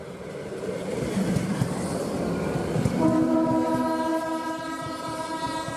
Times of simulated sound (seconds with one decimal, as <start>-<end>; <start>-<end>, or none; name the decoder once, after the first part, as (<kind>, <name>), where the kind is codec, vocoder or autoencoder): 0.0-2.2 (vocoder, BigVGAN v2); 4.1-5.8